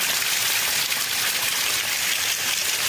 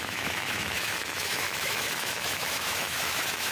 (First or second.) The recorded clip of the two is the first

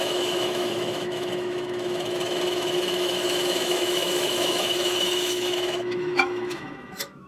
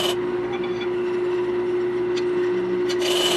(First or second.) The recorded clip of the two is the second